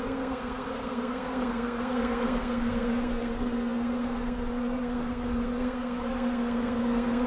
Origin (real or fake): fake